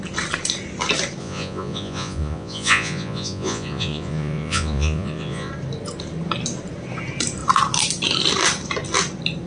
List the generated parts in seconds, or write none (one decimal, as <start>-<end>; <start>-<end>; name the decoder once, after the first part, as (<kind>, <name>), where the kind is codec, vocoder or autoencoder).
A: 1.2-5.5 (vocoder, Vocos)